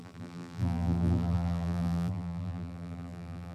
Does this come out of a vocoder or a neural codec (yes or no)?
yes